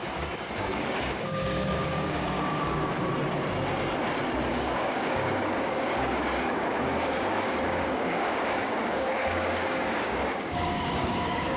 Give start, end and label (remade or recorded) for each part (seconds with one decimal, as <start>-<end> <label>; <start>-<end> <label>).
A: 0.0-0.6 recorded; 0.6-3.1 remade; 3.1-4.5 recorded; 4.5-11.6 remade